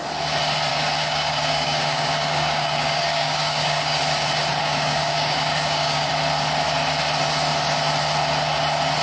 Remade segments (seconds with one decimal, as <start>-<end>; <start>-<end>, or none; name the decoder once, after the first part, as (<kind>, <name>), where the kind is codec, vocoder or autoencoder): 0.7-4.0 (codec, DAC); 4.6-6.1